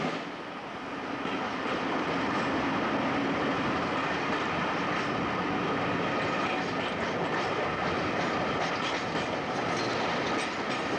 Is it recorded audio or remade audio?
recorded